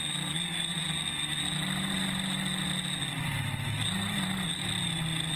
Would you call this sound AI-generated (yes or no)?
no